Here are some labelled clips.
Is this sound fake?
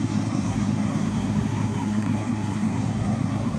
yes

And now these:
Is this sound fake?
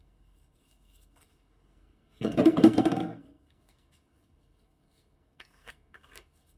yes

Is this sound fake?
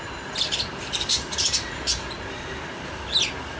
no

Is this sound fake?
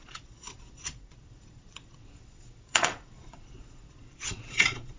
yes